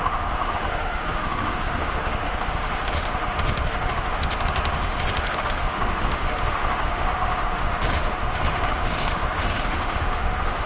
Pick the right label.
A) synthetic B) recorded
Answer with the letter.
A